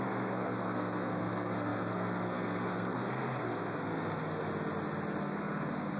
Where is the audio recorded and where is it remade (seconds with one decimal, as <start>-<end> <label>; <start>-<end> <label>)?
0.0-4.5 remade; 4.5-5.2 recorded; 5.2-6.0 remade